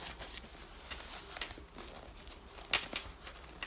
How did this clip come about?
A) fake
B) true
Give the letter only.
B